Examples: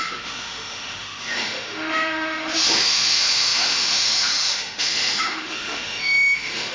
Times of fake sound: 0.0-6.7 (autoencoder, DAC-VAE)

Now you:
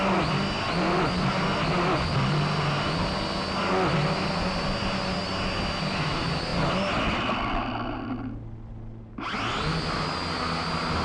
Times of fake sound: none

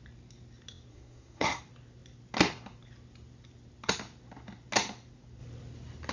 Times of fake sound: 0.9-1.6 (codec, SNAC)

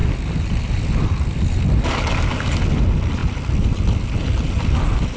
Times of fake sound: none

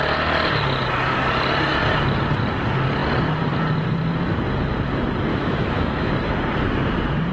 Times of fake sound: 5.3-6.1 (autoencoder, DAC-VAE)

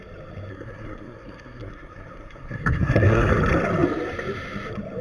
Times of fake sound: 0.5-3.3 (codec, SNAC)

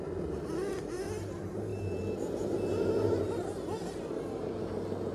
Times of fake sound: none